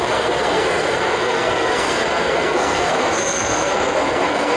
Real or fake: fake